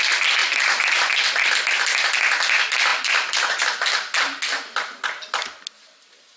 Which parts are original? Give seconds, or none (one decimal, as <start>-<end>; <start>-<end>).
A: 0.0-2.9; 3.6-6.4